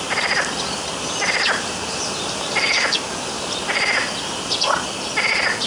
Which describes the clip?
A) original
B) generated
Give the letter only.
A